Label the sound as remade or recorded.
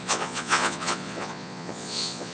remade